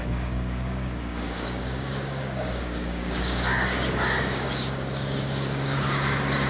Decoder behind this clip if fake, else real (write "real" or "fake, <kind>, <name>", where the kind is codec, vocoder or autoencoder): fake, codec, DAC